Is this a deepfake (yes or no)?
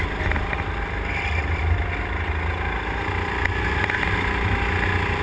no